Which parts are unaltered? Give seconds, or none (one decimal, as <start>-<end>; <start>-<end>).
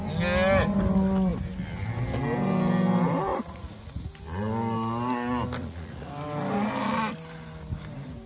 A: 0.0-3.3; 4.1-5.6; 6.1-8.3